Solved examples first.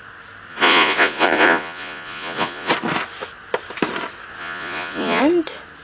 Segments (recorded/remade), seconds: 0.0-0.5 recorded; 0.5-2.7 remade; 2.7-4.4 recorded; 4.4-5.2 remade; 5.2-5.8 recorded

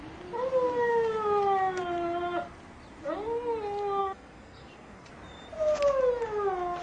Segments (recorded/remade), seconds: 0.0-4.0 recorded; 4.0-5.1 remade; 5.1-6.8 recorded

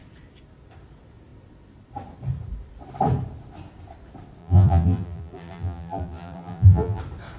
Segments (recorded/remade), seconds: 0.0-4.4 recorded; 4.4-7.0 remade; 7.0-7.4 recorded

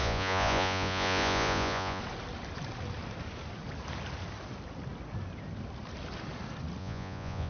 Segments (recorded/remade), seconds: 0.0-2.0 remade; 2.0-6.8 recorded; 6.8-7.5 remade

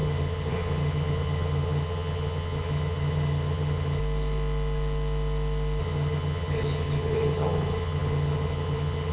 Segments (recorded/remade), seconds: 0.0-4.0 remade; 4.0-5.8 recorded; 5.8-9.1 remade

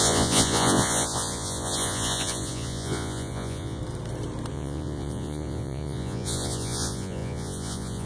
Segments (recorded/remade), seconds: 0.0-3.8 remade; 3.8-4.5 recorded; 4.5-8.1 remade

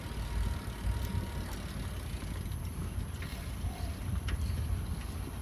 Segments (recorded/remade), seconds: 0.0-3.3 recorded; 3.3-5.4 remade